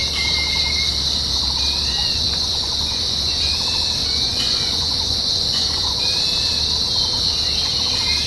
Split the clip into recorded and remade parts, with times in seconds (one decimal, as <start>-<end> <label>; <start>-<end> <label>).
0.0-1.9 recorded; 1.9-3.5 remade; 3.5-4.0 recorded; 4.0-6.0 remade; 6.0-8.3 recorded